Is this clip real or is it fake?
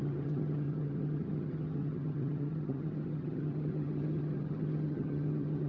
fake